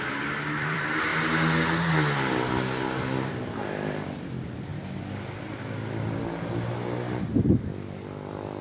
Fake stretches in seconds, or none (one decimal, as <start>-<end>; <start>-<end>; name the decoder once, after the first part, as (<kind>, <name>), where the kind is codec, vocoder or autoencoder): 0.0-1.1 (vocoder, BigVGAN v2); 3.3-4.7; 7.5-8.6